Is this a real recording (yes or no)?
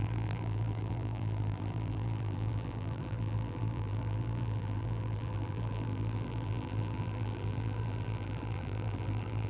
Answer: no